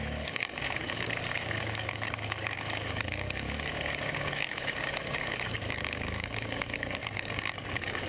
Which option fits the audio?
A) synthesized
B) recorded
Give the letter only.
A